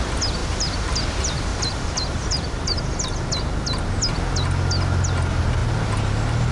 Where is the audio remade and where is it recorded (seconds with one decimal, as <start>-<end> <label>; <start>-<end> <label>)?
0.0-0.4 recorded; 0.4-1.0 remade; 1.0-1.5 recorded; 1.5-3.2 remade; 3.2-6.5 recorded